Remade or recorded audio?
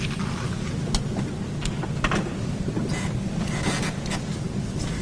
recorded